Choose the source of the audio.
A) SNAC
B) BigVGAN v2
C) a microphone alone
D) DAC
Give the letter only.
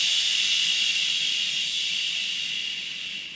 C